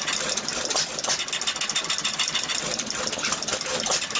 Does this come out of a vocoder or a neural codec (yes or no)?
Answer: no